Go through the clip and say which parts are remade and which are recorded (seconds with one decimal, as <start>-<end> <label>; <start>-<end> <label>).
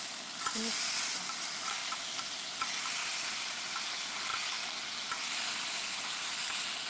0.0-1.8 recorded; 1.8-2.6 remade; 2.6-3.0 recorded; 3.0-3.9 remade; 3.9-6.9 recorded